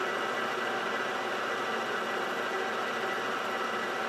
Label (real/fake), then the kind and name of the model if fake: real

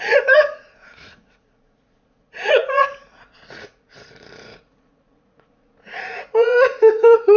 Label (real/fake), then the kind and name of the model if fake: fake, vocoder, Vocos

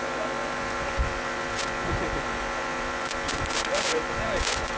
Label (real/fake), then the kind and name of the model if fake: fake, vocoder, Vocos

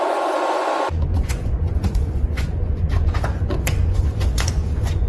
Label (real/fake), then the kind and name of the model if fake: fake, vocoder, Vocos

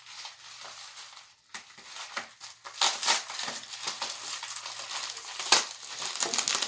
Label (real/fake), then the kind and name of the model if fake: real